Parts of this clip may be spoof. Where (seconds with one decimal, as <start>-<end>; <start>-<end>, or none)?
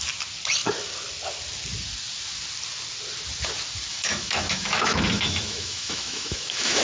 3.9-6.8